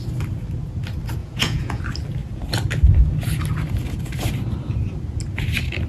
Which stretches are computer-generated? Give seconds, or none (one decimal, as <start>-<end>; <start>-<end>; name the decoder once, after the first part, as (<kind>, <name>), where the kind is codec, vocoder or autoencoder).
1.2-1.8 (vocoder, Vocos)